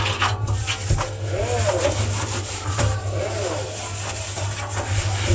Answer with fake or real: real